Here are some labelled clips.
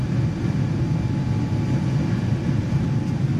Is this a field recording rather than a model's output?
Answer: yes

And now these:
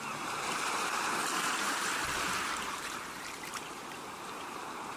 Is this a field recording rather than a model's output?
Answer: no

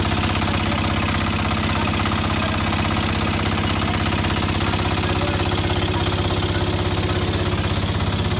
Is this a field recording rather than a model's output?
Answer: yes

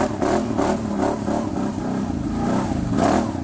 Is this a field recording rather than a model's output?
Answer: yes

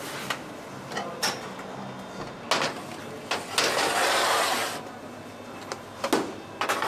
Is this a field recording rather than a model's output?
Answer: yes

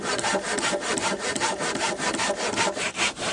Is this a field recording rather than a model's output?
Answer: no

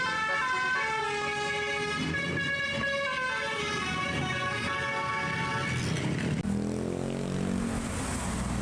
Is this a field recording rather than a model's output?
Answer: yes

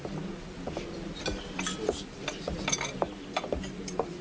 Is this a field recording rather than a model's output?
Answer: yes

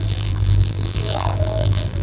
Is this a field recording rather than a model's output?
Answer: no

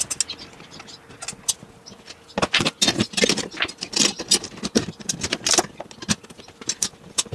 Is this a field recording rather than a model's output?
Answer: yes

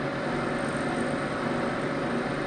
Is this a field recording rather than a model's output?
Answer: yes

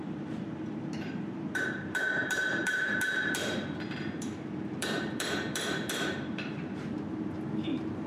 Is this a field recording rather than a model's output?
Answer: no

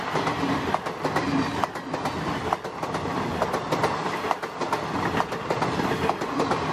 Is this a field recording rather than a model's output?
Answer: yes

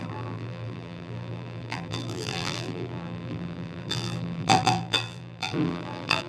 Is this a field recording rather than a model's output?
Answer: no